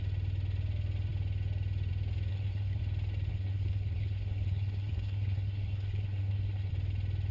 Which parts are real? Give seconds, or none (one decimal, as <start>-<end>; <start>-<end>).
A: 0.0-2.3; 2.8-3.3; 6.7-7.3